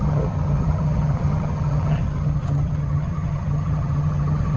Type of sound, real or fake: fake